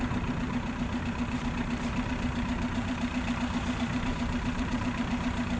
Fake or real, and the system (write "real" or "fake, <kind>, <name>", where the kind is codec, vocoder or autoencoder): fake, vocoder, BigVGAN v2